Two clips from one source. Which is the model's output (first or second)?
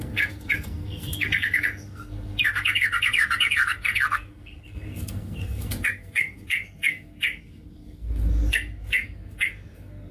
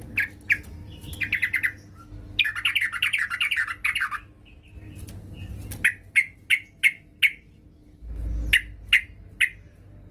first